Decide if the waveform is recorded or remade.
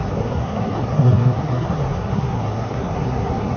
remade